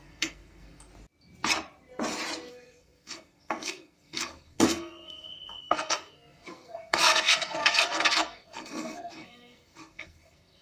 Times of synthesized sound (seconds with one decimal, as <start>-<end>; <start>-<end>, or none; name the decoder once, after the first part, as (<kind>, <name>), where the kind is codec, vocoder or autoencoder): 0.0-0.9 (codec, SNAC); 2.5-10.6